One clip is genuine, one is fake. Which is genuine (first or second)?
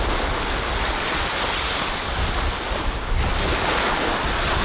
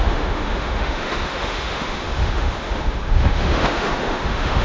first